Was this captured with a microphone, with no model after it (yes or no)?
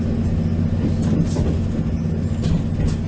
yes